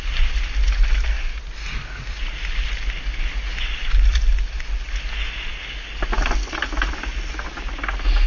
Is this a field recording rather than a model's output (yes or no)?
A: yes